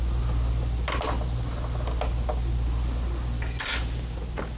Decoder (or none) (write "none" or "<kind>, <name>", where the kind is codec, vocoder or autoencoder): none